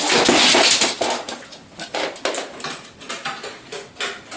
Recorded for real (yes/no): yes